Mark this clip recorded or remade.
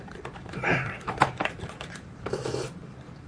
remade